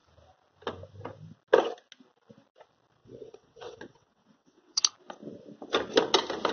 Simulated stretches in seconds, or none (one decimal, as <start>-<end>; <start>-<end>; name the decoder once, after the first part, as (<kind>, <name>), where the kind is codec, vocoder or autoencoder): 3.0-4.8 (vocoder, WaveNeXt)